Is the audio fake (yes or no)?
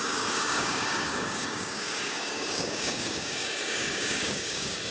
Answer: yes